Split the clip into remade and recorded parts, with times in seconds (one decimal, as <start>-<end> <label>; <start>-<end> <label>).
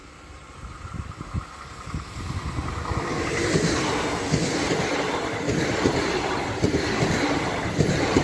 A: 0.0-8.2 recorded